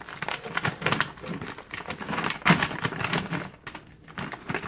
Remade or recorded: recorded